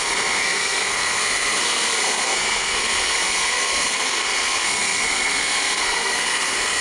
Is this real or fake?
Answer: fake